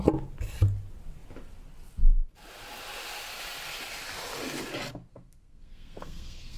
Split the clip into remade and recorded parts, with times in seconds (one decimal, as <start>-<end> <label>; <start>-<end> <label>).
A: 0.0-5.1 recorded; 5.1-6.6 remade